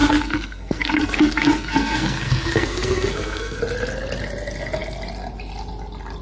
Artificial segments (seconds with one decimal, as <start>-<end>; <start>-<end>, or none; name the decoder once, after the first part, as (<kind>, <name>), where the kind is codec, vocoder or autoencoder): 0.0-3.6 (codec, SNAC)